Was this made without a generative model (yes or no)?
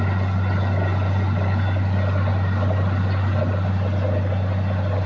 yes